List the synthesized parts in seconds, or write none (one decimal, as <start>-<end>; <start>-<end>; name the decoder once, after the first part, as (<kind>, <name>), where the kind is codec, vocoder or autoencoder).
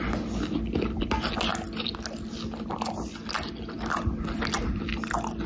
none